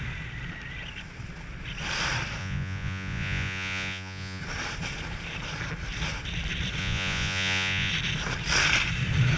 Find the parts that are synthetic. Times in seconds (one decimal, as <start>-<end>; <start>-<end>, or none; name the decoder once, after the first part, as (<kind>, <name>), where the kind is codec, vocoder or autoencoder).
2.4-4.4 (vocoder, Vocos); 6.8-7.9